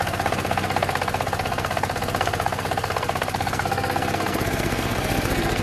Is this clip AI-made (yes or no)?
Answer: yes